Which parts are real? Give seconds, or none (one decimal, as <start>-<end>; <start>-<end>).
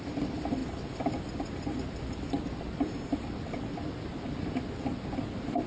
0.0-5.7